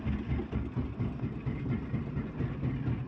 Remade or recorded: recorded